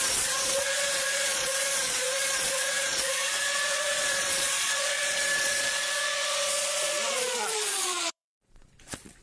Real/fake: fake